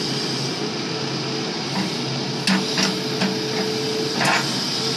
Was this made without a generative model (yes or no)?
yes